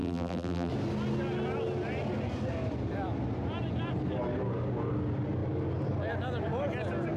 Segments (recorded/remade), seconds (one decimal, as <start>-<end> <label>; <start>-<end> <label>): 0.0-0.7 remade; 0.7-7.2 recorded